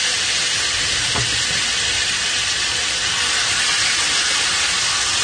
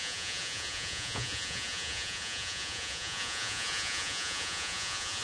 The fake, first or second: second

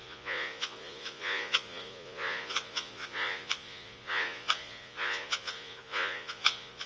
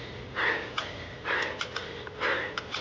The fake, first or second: first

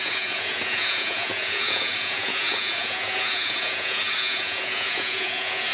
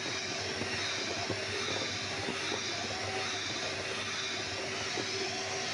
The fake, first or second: first